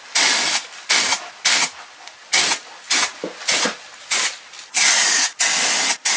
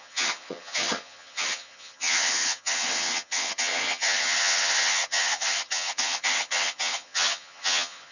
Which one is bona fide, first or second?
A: first